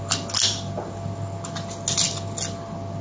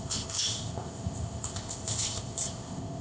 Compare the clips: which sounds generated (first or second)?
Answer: second